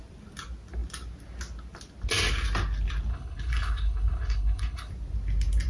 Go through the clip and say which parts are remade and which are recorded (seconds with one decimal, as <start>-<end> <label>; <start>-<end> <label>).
0.0-3.1 recorded; 3.1-4.9 remade; 4.9-5.7 recorded